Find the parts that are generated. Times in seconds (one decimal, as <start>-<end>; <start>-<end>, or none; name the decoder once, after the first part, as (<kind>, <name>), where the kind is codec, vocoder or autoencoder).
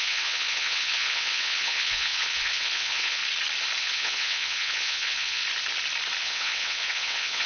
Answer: 0.0-3.2 (vocoder, WaveNeXt); 3.8-5.4; 6.2-7.5